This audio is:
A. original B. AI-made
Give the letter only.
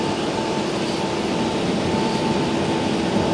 A